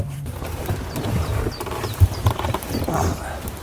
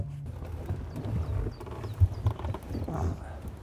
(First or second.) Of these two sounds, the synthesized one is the first